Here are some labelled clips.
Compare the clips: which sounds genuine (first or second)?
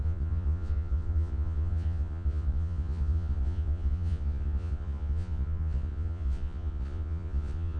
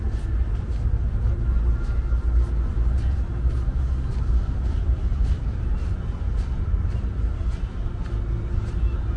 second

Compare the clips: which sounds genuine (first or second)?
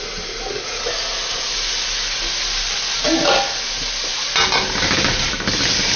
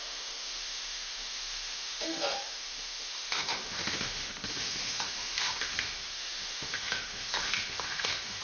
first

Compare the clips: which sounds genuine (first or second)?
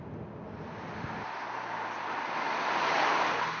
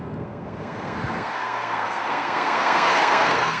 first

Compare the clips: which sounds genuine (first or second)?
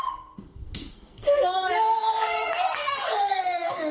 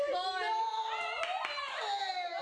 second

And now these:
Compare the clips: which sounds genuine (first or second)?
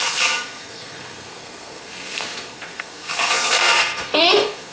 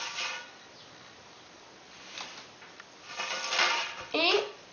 second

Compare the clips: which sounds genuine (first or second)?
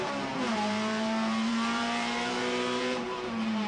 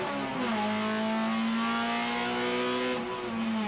second